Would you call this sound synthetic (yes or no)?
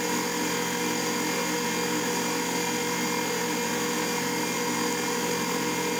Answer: no